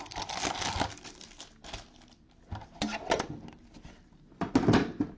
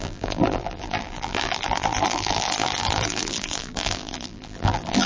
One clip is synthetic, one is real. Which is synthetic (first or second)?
second